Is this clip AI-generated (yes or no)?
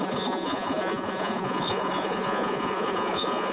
yes